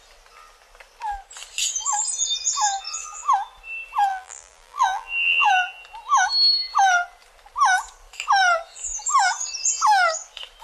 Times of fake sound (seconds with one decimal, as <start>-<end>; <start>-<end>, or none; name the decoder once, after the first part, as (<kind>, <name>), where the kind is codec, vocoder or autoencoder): 4.1-5.5 (vocoder, BigVGAN v2)